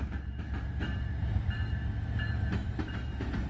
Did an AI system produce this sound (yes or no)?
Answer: yes